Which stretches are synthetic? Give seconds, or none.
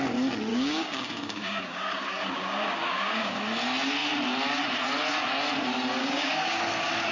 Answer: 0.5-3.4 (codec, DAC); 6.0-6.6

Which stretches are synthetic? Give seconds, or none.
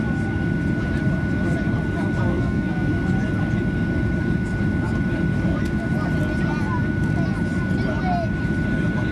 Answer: 2.3-2.9 (codec, SNAC)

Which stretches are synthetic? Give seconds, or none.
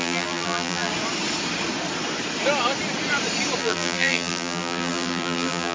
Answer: 0.0-0.9 (vocoder, BigVGAN v2); 3.6-5.7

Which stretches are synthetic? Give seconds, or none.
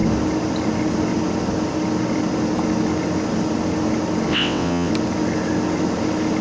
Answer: 4.3-4.9 (vocoder, WaveNeXt)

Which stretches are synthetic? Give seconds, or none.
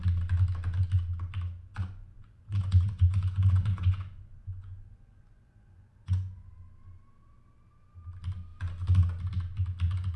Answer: 1.7-6.5 (vocoder, Vocos)